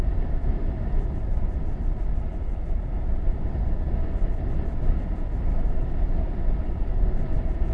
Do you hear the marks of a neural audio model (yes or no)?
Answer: no